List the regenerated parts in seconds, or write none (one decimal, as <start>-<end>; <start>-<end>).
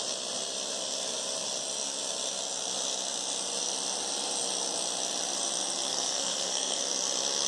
5.9-6.8